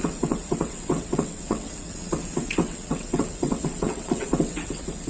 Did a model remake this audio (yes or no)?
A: yes